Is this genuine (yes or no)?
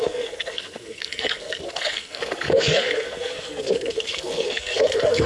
no